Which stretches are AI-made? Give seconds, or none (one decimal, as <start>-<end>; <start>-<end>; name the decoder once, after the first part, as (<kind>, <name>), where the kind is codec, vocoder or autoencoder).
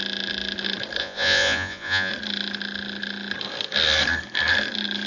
1.0-2.1 (vocoder, Vocos)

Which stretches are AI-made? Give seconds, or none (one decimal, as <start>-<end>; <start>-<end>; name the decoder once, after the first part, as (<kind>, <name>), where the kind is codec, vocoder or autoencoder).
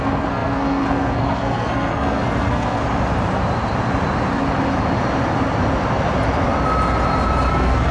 0.0-2.8 (codec, SNAC); 7.5-7.9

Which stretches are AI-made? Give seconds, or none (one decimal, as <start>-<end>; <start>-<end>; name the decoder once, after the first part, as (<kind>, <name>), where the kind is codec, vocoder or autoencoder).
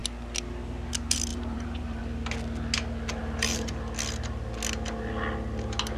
1.3-2.0 (vocoder, BigVGAN v2); 3.2-3.7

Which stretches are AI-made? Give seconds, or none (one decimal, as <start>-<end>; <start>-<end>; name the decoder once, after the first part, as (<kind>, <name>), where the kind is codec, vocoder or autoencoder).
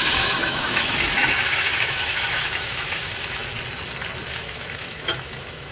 0.0-3.4 (autoencoder, DAC-VAE); 4.3-5.7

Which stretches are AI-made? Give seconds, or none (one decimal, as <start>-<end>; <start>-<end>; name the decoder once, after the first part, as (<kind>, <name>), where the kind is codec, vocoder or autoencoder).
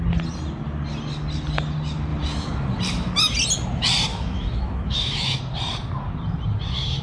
4.1-5.4 (autoencoder, DAC-VAE)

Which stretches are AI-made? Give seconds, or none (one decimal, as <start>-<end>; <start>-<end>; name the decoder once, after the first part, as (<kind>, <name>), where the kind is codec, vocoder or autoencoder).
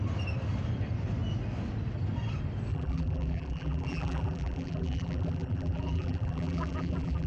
2.7-7.3 (vocoder, BigVGAN v2)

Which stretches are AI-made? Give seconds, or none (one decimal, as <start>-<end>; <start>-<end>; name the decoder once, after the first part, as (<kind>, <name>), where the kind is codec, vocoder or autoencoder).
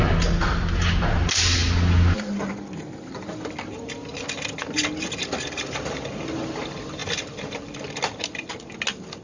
none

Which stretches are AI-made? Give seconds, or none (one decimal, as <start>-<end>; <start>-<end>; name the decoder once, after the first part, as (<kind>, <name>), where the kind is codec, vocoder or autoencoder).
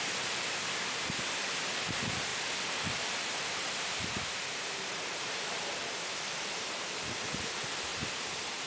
2.3-6.9 (vocoder, BigVGAN v2); 7.9-8.7